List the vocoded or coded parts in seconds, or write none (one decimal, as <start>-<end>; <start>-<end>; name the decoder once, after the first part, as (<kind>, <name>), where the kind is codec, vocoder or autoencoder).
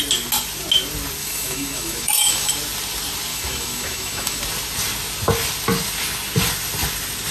1.2-2.5 (autoencoder, DAC-VAE); 3.3-4.4